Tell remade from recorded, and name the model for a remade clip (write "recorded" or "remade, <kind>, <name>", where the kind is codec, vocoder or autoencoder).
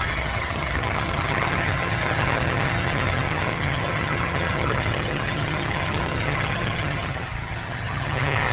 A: remade, vocoder, HiFi-GAN